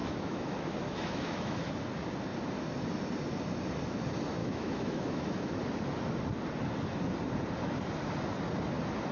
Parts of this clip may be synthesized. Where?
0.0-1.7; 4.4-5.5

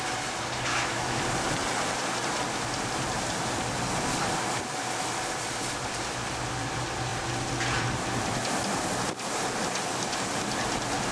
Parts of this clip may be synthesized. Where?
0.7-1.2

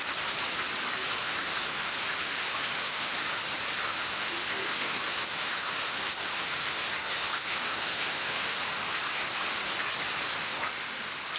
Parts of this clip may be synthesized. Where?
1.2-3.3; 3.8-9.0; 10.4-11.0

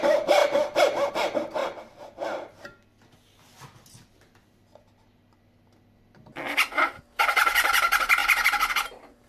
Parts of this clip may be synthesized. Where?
none

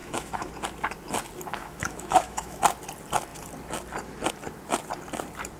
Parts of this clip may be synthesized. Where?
0.0-0.5; 1.5-2.6